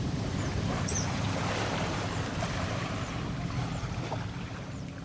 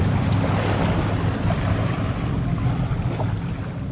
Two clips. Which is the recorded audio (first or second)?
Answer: second